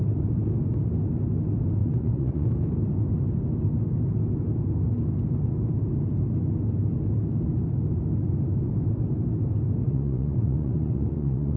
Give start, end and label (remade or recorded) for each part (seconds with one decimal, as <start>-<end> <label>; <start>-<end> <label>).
0.0-1.8 recorded; 1.8-2.5 remade; 2.5-9.8 recorded; 9.8-11.6 remade